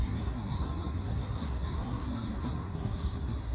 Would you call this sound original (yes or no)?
no